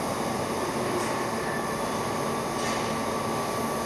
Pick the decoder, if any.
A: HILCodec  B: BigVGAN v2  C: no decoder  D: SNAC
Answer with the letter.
C